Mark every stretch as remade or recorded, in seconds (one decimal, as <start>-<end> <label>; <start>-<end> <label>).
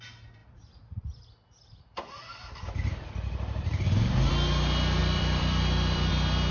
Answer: 0.0-0.4 recorded; 0.4-4.3 remade; 4.3-5.0 recorded; 5.0-6.1 remade; 6.1-6.5 recorded